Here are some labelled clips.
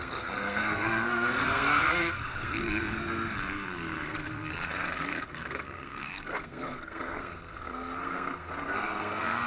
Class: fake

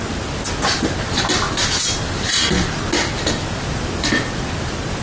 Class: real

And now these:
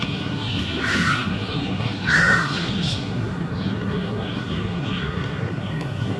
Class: fake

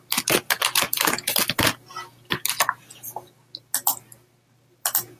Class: real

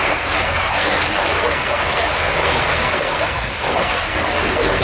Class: fake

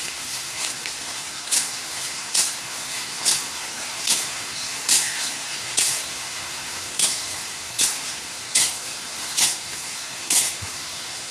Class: fake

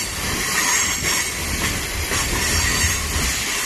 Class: real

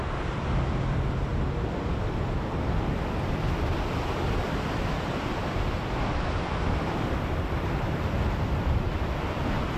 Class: real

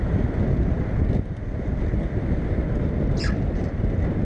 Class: real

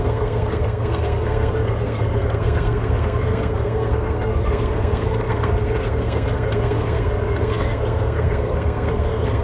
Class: fake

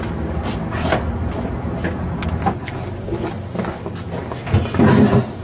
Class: real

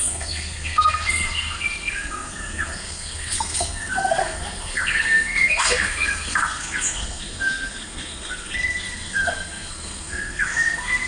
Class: fake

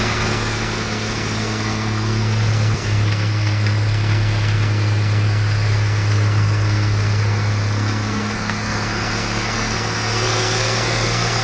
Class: fake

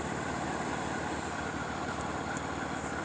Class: real